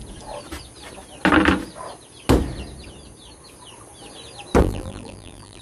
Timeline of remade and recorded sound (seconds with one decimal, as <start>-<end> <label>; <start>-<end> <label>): 0.0-4.6 recorded; 4.6-5.6 remade